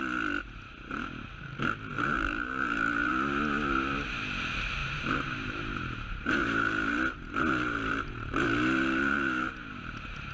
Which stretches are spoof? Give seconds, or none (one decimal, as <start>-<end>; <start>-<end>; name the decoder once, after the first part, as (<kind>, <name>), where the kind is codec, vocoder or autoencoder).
1.9-3.1 (vocoder, BigVGAN v2); 4.8-9.8